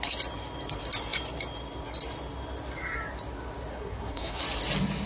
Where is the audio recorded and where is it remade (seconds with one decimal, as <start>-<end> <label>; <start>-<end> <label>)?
0.0-3.7 recorded; 3.7-4.4 remade; 4.4-5.1 recorded